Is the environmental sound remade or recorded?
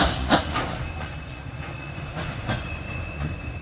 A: remade